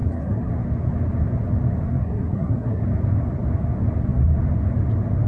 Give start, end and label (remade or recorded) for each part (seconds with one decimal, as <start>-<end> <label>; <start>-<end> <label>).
0.0-0.5 remade; 0.5-1.9 recorded; 1.9-2.8 remade; 2.8-5.3 recorded